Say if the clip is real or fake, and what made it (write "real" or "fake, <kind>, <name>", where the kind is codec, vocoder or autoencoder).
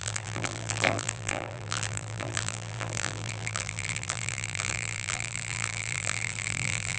fake, vocoder, BigVGAN v2